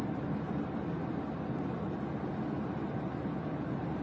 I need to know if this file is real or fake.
real